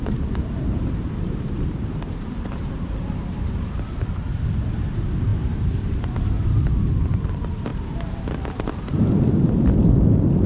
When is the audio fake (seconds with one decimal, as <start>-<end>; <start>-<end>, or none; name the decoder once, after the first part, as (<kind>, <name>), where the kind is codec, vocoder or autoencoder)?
0.0-10.5 (vocoder, BigVGAN v2)